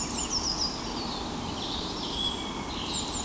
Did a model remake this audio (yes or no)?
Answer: no